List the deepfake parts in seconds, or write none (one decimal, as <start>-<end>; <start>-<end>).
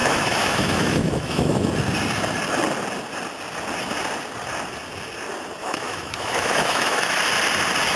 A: 0.0-1.7; 5.6-7.2